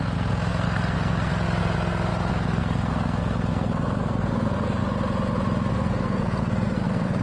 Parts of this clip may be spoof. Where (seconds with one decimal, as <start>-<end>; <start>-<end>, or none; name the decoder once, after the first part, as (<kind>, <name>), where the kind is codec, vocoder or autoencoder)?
0.0-1.3 (codec, SNAC); 2.3-4.8; 5.7-7.2